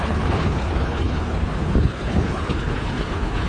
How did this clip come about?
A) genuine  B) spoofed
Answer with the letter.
B